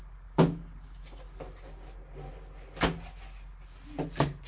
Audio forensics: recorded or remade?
recorded